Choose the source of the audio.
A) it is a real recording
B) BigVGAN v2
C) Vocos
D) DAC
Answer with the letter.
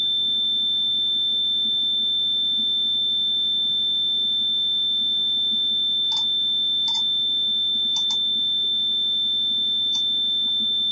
A